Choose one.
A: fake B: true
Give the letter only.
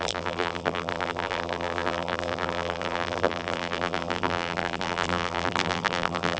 A